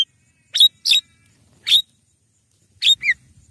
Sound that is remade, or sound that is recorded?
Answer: recorded